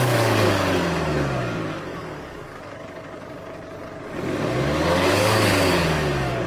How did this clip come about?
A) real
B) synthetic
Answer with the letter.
B